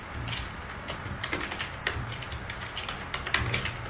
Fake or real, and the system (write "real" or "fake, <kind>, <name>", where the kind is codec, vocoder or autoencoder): real